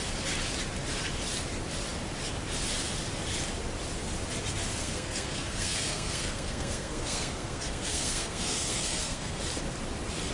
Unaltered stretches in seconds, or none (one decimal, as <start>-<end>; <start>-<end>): 0.0-4.8; 9.4-10.3